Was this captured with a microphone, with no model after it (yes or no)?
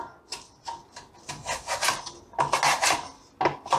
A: yes